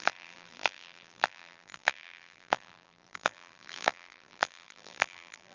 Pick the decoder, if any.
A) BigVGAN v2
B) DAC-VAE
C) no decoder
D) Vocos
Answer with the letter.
A